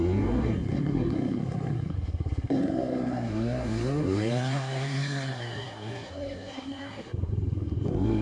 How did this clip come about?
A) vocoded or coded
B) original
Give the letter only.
A